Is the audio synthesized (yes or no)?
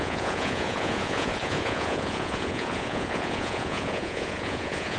yes